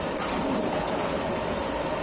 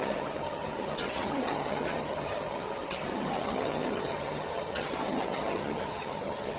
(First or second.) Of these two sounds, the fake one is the second